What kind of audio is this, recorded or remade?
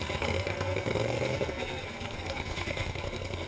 remade